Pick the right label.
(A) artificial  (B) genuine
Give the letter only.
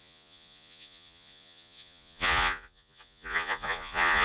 A